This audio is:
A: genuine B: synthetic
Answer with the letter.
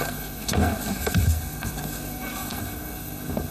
B